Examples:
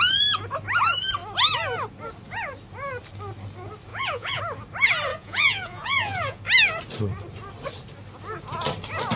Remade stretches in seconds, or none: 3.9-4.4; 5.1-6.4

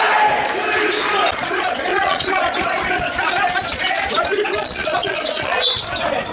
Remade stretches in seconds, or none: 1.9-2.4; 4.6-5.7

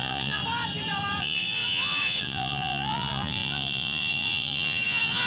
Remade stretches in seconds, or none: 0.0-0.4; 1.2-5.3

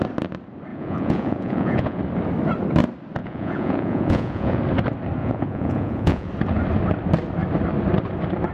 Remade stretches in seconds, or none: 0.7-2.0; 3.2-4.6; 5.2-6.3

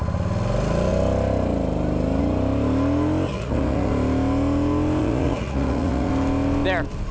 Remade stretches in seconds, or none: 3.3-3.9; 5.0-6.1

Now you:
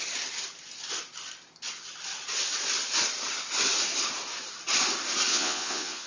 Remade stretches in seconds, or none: 5.3-6.1

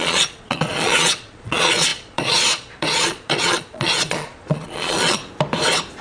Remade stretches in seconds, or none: 0.0-5.2

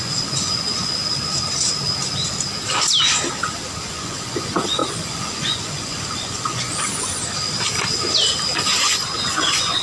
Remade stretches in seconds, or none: 0.0-1.0; 3.8-7.2; 8.8-9.8